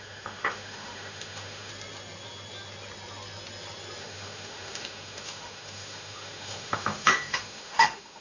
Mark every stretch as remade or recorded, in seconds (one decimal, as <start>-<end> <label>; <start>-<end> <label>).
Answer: 0.0-1.7 remade; 1.7-4.0 recorded; 4.0-8.2 remade